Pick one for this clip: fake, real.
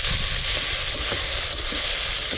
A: real